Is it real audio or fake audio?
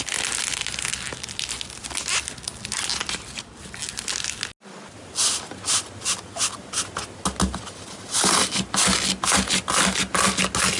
real